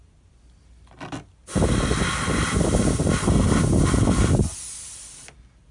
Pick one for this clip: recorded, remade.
recorded